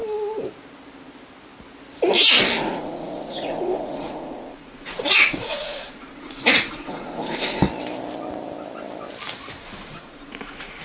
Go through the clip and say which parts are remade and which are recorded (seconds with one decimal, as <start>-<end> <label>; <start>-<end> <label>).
0.0-2.6 recorded; 2.6-7.6 remade; 7.6-9.6 recorded; 9.6-10.8 remade